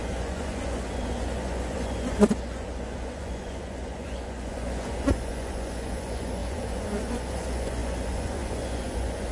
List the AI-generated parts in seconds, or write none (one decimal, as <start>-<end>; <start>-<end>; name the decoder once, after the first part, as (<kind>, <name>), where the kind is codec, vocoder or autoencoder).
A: 0.0-9.3 (vocoder, Vocos)